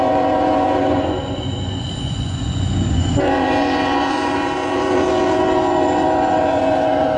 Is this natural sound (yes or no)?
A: no